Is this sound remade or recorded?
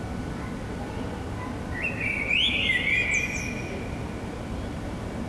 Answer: recorded